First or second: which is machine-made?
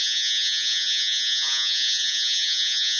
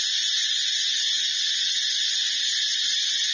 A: first